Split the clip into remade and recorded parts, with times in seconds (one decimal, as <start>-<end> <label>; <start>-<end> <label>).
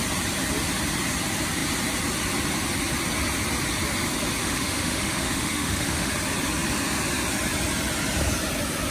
0.0-4.4 recorded; 4.4-6.1 remade; 6.1-8.9 recorded